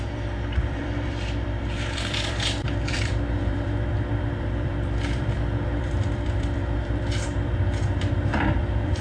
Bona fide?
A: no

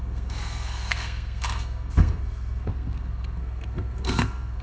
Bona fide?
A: no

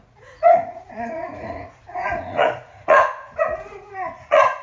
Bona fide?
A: no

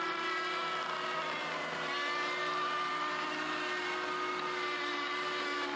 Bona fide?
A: yes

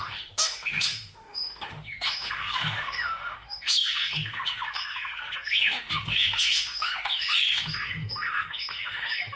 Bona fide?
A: no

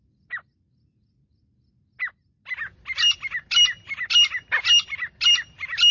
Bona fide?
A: yes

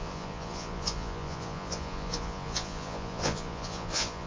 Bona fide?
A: no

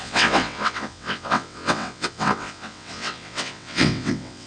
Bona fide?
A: no